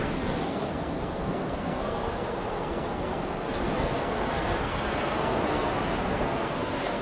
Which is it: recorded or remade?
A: remade